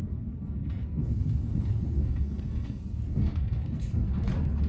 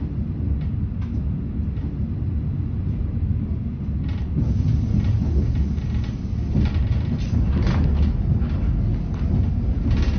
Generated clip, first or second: first